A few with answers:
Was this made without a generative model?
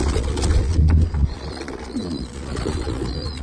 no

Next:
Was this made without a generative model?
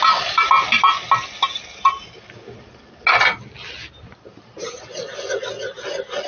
yes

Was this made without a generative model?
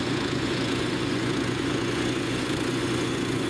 no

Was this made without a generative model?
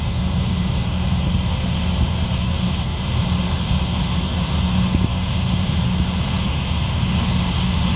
yes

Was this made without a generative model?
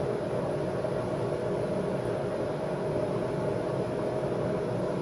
yes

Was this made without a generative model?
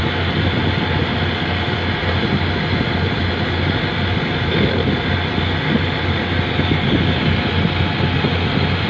yes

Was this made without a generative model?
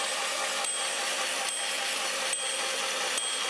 yes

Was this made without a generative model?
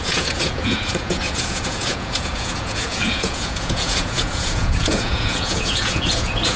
no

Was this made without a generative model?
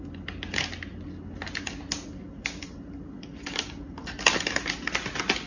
yes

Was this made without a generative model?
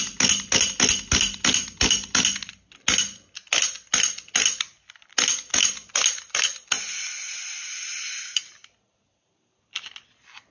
yes